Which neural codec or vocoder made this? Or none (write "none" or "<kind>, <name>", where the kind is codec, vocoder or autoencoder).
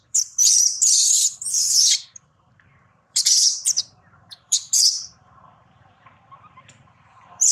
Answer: vocoder, BigVGAN v2